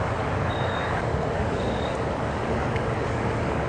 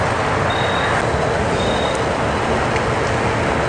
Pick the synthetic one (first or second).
first